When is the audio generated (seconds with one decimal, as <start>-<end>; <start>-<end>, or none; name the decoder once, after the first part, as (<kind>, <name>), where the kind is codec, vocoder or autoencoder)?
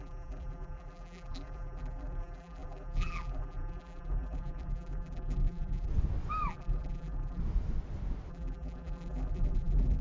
0.0-5.9 (vocoder, BigVGAN v2); 6.5-7.4; 8.3-10.0